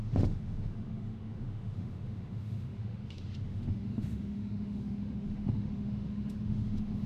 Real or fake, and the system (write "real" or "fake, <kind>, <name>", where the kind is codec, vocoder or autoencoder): fake, autoencoder, DAC-VAE